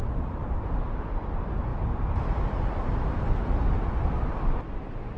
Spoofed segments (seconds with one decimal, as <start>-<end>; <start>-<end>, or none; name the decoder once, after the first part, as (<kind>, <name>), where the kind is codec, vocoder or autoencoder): none

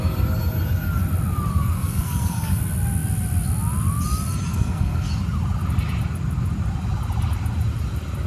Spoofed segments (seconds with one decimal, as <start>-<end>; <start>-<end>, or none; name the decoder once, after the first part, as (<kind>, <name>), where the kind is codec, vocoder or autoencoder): 1.6-2.6 (codec, SNAC); 4.5-5.2

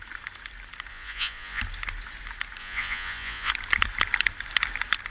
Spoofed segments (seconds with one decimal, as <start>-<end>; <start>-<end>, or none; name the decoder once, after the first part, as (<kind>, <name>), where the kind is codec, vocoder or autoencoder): 0.9-1.6 (vocoder, Vocos); 2.6-3.5

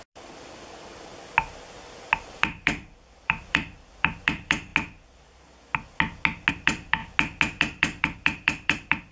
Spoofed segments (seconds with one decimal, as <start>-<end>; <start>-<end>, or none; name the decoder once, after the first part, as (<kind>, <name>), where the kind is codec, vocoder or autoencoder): 0.0-1.1 (vocoder, BigVGAN v2); 2.2-4.7; 6.5-7.0; 7.6-9.1

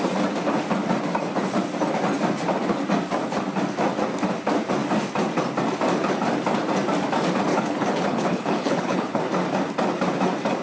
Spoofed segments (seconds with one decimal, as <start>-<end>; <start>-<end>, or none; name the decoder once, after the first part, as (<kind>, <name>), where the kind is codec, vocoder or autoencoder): 7.5-9.2 (codec, HILCodec)

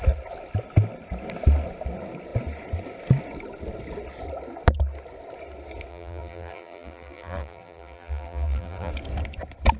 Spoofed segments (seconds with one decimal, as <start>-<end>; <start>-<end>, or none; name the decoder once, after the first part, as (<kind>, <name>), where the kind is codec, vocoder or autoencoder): 5.9-8.9 (vocoder, BigVGAN v2)

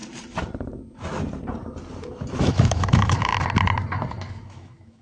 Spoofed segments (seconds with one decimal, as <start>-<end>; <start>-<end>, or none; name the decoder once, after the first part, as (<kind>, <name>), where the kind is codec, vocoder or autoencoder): 2.4-3.3 (autoencoder, DAC-VAE); 4.3-5.0

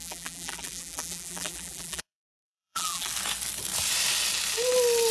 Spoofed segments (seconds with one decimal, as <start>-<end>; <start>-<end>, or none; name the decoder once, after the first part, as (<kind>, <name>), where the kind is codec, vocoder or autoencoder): 0.0-3.1 (vocoder, BigVGAN v2)